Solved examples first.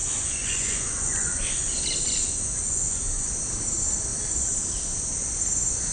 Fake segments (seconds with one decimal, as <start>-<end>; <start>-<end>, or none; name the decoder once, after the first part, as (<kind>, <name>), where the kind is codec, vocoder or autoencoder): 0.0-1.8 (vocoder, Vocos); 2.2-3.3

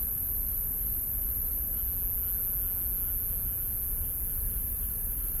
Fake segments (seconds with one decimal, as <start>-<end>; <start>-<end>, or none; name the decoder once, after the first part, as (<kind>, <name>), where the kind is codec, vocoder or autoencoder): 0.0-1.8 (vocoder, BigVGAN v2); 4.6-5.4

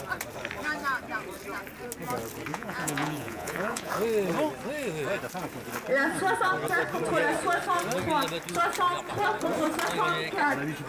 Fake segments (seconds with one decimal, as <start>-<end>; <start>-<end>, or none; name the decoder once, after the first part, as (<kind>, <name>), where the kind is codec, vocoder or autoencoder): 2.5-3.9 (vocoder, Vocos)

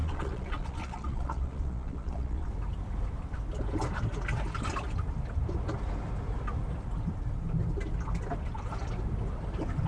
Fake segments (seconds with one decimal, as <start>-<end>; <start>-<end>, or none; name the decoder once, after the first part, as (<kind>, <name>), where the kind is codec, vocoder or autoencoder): 0.0-2.5 (vocoder, Vocos)

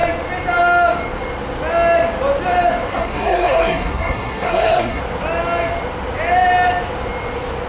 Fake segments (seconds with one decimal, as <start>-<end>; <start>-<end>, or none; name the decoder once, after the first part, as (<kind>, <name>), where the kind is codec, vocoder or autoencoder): 2.9-5.0 (codec, SNAC)

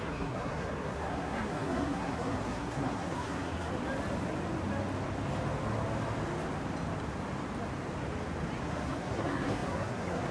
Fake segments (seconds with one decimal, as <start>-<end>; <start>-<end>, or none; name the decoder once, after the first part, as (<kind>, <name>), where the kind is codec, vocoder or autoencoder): 0.0-3.7 (codec, SNAC); 8.6-10.3

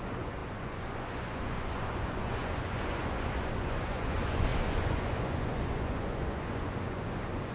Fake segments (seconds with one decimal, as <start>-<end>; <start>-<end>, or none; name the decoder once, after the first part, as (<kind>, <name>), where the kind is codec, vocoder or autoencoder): 0.0-7.5 (vocoder, Vocos)

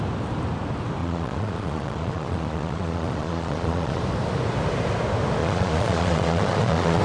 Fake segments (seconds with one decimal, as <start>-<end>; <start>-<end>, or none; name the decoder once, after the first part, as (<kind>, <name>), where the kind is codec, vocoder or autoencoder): 1.0-4.0 (vocoder, Vocos); 5.4-7.0